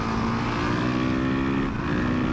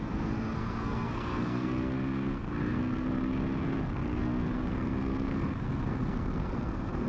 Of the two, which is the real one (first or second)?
first